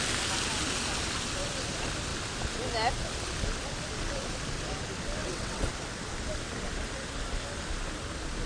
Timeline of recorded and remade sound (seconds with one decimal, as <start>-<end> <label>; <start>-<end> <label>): 0.0-5.2 recorded; 5.2-5.7 remade; 5.7-8.5 recorded